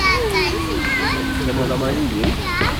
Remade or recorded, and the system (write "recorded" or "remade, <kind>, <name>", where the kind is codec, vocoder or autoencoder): recorded